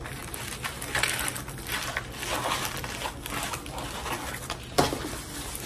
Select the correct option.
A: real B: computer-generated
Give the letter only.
A